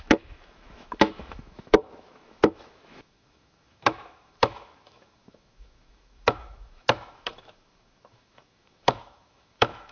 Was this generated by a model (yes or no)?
yes